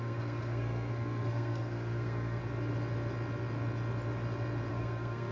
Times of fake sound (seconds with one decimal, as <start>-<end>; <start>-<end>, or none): 0.0-2.4; 4.7-5.3